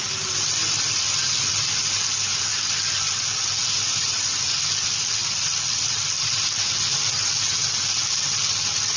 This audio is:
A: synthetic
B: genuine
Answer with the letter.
B